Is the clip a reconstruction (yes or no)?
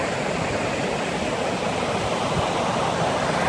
no